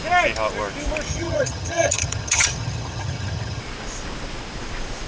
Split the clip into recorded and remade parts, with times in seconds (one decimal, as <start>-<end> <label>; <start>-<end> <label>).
0.0-1.1 recorded; 1.1-3.6 remade; 3.6-5.1 recorded